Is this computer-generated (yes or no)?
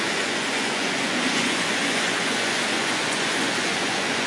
yes